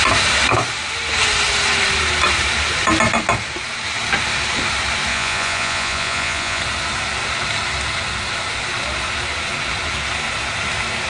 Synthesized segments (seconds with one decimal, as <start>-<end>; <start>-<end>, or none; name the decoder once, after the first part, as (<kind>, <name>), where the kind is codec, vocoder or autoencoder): 5.1-6.6 (vocoder, Vocos)